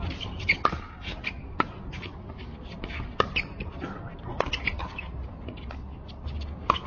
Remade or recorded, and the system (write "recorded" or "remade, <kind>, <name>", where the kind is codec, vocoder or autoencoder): recorded